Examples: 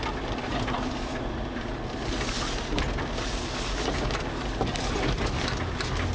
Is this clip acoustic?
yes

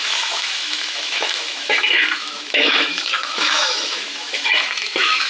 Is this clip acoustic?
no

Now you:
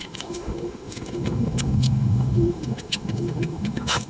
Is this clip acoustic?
no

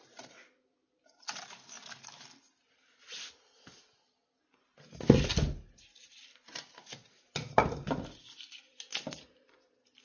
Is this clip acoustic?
yes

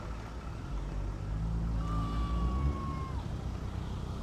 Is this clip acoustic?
yes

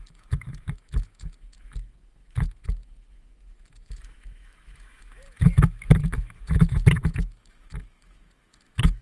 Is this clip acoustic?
no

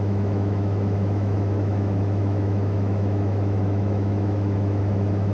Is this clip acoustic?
no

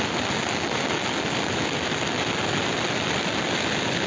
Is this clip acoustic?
yes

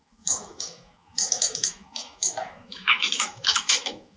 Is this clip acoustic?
no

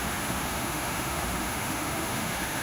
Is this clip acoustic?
no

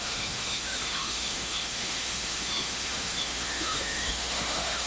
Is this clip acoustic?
no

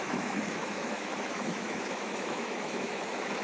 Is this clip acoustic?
no